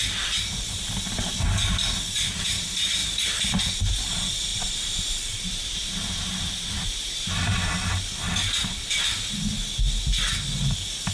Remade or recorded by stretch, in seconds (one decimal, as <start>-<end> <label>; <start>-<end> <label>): 0.0-4.5 recorded; 4.5-7.3 remade; 7.3-11.1 recorded